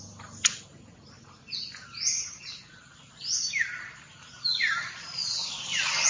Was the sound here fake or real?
real